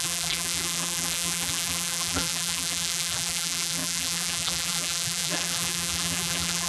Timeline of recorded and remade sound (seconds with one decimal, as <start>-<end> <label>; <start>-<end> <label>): 0.0-6.7 remade